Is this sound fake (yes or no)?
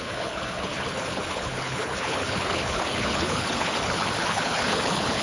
yes